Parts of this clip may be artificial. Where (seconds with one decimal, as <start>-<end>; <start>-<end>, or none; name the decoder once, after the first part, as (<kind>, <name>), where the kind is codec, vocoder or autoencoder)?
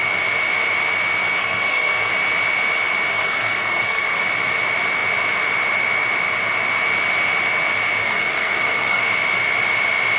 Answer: 1.4-2.1 (codec, SNAC); 3.1-4.2; 8.0-9.0